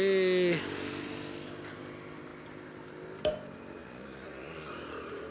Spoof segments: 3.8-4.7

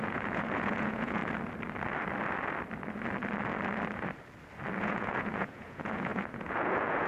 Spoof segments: 0.0-1.2; 4.8-7.1

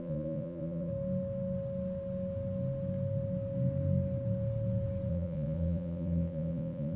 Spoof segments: 0.0-0.9; 5.1-7.0